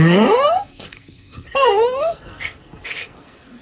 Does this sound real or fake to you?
fake